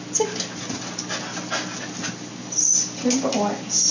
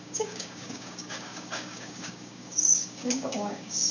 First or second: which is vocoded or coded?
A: second